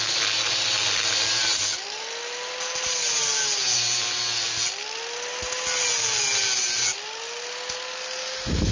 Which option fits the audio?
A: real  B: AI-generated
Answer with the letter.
A